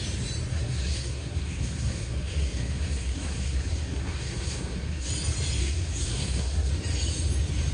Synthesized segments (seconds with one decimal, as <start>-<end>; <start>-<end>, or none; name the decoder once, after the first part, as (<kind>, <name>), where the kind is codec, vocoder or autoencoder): 0.5-5.1 (codec, SNAC); 5.6-6.7